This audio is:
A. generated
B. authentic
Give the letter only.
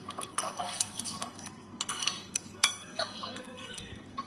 A